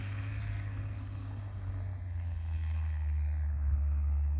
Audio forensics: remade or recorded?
remade